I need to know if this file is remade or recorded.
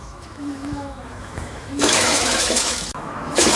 remade